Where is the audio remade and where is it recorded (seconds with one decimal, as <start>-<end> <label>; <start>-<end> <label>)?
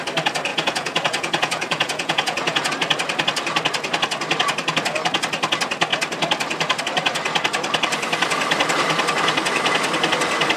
0.0-0.5 recorded; 0.5-2.7 remade; 2.7-10.6 recorded